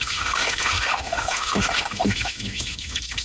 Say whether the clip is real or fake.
fake